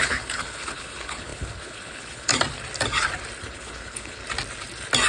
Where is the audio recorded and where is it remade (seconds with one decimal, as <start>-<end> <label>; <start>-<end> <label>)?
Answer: 0.0-2.3 remade; 2.3-3.4 recorded; 3.4-4.2 remade; 4.2-5.1 recorded